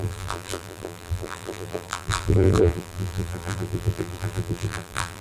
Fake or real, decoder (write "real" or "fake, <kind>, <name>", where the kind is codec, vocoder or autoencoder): fake, vocoder, BigVGAN v2